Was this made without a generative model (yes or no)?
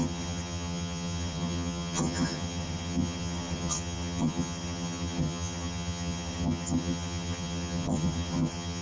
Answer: no